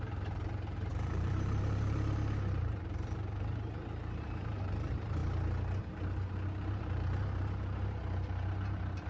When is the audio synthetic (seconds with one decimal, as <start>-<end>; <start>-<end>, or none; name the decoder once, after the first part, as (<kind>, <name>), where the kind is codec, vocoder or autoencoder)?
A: 0.0-5.2 (vocoder, BigVGAN v2); 6.8-9.1